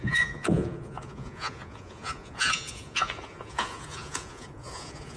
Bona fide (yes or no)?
no